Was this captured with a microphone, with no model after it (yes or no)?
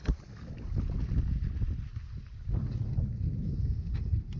yes